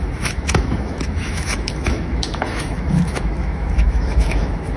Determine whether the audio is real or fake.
fake